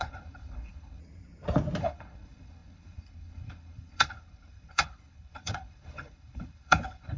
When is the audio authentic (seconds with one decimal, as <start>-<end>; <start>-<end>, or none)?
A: 1.0-1.8